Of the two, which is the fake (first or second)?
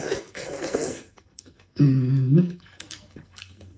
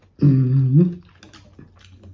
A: first